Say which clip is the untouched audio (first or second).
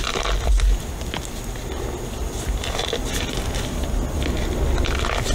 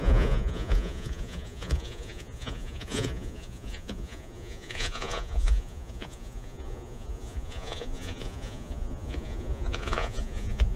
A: first